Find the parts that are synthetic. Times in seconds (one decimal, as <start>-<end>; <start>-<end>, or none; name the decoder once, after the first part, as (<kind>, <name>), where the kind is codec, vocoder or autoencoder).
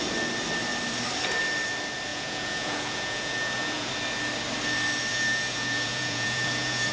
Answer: 2.1-3.9 (vocoder, Vocos); 5.1-6.9